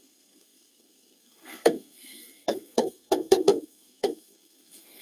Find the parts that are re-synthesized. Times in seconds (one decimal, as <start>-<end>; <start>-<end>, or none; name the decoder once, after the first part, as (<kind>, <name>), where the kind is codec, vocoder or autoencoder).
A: 0.0-5.0 (codec, SNAC)